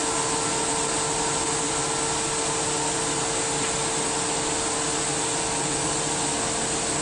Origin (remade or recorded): recorded